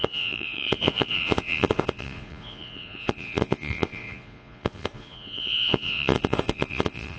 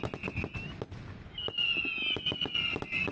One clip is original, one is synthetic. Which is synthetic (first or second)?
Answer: first